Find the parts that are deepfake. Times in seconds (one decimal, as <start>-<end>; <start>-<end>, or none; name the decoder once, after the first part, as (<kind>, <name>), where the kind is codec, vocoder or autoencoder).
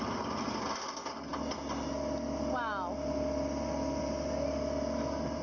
none